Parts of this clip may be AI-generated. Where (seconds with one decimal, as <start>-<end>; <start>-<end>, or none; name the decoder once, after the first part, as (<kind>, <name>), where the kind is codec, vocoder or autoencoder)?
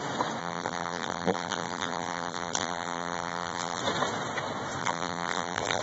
0.4-3.8 (vocoder, BigVGAN v2); 4.8-5.8